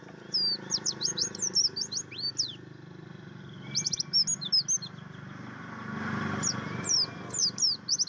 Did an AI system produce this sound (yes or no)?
no